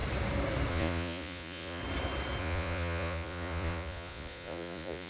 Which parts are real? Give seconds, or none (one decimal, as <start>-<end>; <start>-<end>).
0.0-0.7; 1.8-2.4